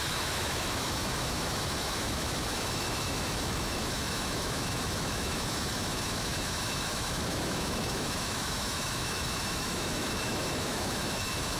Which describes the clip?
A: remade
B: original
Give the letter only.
A